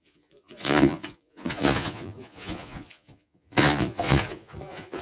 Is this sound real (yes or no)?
no